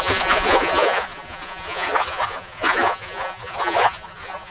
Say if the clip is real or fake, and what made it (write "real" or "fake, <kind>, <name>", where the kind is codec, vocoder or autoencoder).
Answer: fake, vocoder, Vocos